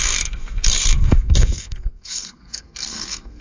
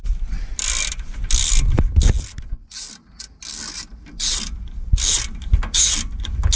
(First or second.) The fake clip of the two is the first